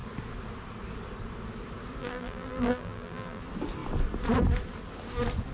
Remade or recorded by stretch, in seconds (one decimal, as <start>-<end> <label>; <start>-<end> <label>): 0.0-2.0 recorded; 2.0-3.4 remade; 3.4-5.5 recorded